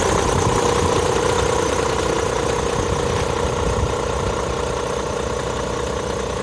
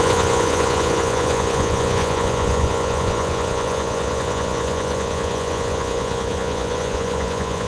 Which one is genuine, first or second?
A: first